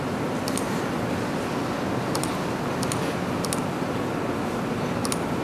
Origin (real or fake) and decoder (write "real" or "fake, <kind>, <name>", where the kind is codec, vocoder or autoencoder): real